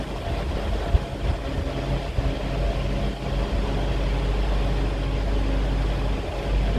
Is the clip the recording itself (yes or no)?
yes